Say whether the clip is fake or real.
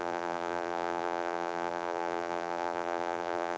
fake